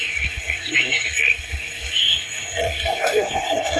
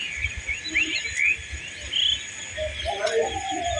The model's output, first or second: first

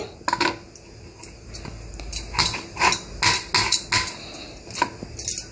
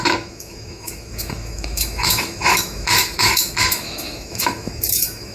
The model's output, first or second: second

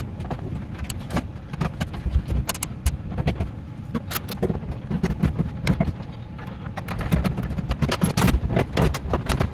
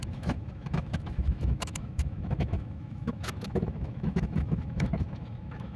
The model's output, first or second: second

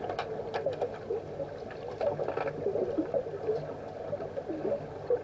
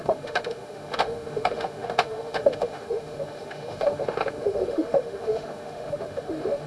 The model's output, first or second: second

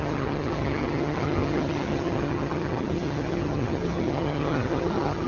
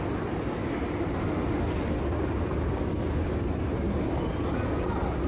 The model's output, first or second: first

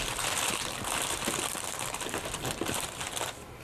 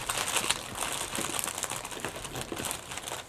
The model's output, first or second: first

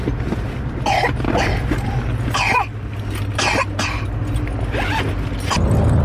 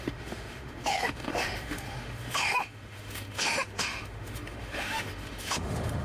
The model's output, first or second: second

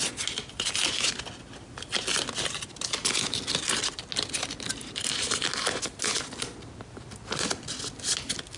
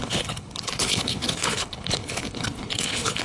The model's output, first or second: second